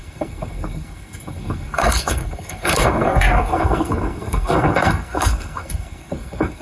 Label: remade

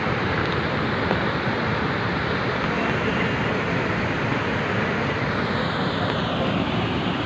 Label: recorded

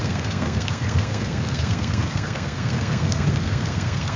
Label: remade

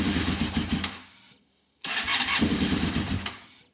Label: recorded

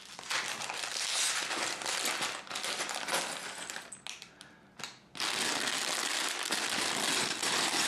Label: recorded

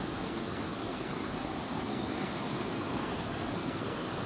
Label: remade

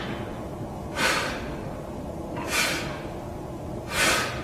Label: recorded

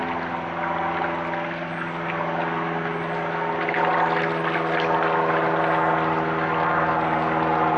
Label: recorded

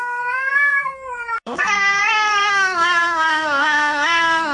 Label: remade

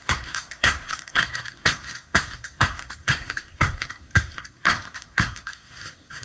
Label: remade